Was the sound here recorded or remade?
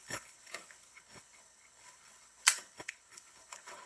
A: remade